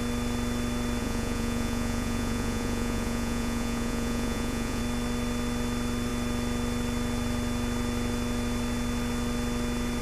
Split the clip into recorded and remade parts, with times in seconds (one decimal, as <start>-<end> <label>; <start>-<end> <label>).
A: 0.0-1.0 recorded; 1.0-4.8 remade; 4.8-10.0 recorded